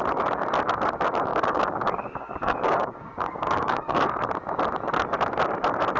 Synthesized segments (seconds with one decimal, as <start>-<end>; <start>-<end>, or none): 1.3-4.0